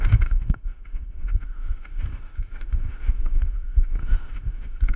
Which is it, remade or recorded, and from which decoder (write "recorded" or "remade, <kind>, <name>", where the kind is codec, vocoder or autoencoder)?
remade, autoencoder, DAC-VAE